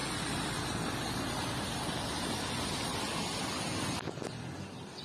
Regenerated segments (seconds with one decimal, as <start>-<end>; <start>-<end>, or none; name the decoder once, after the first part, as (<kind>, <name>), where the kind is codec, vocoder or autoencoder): 0.0-3.0 (vocoder, BigVGAN v2)